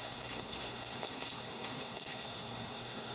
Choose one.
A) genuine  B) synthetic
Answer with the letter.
B